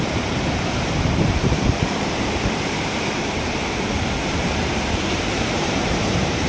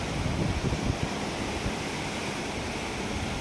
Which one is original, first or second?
second